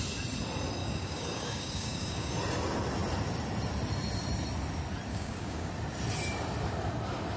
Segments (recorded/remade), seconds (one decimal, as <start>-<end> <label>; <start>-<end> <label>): 0.0-0.8 recorded; 0.8-2.3 remade; 2.3-5.1 recorded; 5.1-5.7 remade; 5.7-7.4 recorded